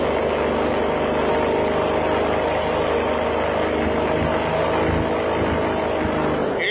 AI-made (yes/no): no